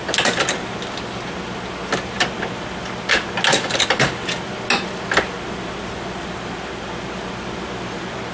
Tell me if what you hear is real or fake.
real